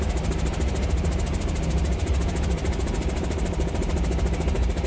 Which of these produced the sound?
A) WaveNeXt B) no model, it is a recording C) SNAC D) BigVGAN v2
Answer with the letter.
B